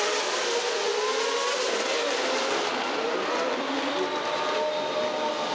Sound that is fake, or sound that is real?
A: real